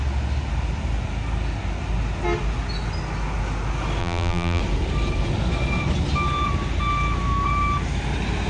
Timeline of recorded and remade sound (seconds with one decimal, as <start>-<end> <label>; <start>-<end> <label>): 0.0-4.0 recorded; 4.0-4.6 remade; 4.6-8.5 recorded